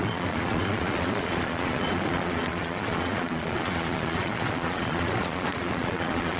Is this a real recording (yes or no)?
no